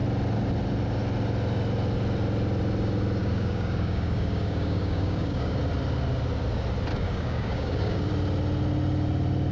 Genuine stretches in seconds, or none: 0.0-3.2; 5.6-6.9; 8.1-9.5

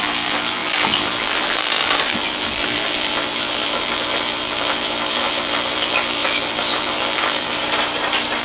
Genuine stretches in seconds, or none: 7.6-8.4

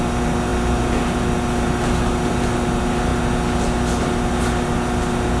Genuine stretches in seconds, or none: 0.0-5.4

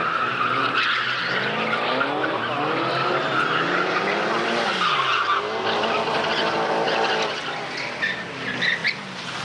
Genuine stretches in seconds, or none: 0.0-9.4

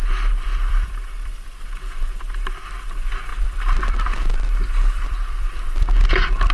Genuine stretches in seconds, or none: 0.0-0.5; 2.7-3.3; 5.8-6.5